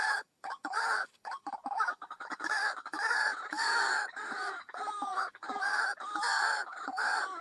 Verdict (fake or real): fake